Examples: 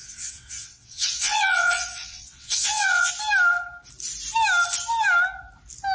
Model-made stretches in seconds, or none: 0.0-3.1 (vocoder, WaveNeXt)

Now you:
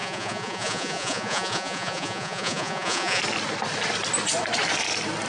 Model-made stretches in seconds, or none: 0.0-3.2 (vocoder, Vocos)

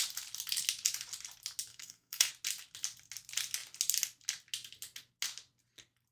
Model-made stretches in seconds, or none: 1.7-2.3 (codec, SNAC)

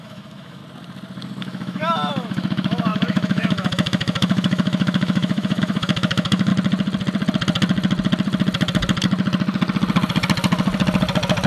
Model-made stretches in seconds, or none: 0.0-0.6 (autoencoder, DAC-VAE); 1.4-6.5

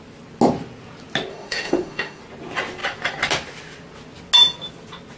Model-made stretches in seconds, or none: 1.3-2.2 (autoencoder, DAC-VAE)

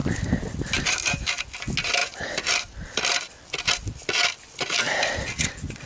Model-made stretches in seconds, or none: 0.0-0.9 (vocoder, BigVGAN v2); 2.0-5.5

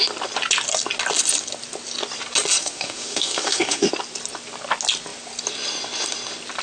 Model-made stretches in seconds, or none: 2.6-3.9 (autoencoder, DAC-VAE)